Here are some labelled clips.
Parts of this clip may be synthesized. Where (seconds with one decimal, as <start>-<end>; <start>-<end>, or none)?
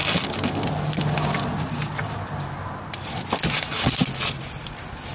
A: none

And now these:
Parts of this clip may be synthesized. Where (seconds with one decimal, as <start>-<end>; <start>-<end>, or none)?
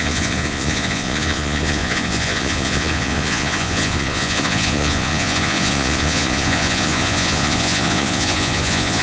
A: 0.0-9.0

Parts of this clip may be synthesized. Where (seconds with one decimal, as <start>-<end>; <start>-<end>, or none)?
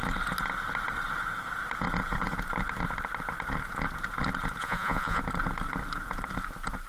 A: 4.6-5.2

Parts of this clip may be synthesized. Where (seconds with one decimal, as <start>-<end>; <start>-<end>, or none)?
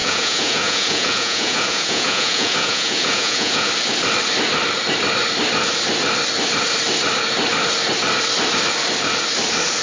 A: 0.0-3.7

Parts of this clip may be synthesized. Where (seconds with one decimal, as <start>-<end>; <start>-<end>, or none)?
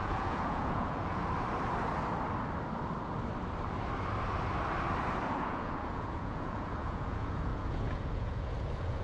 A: 0.0-1.2; 5.3-9.0